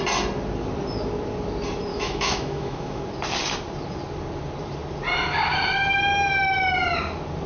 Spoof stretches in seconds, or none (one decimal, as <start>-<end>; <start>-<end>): 1.9-3.0